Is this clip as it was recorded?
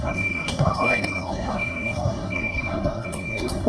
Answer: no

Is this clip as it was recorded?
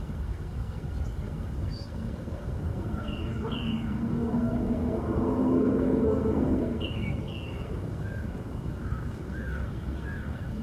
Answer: no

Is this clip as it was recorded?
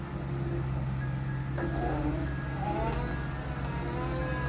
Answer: yes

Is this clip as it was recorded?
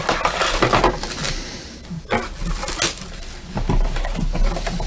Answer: yes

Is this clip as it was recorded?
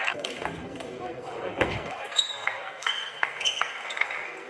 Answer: no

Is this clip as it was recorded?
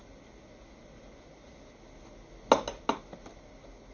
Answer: yes